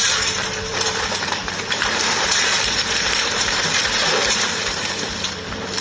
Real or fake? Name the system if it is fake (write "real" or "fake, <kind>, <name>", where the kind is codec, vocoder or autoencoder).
fake, vocoder, BigVGAN v2